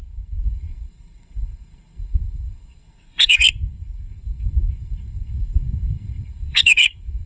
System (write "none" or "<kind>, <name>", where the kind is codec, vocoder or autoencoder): codec, SNAC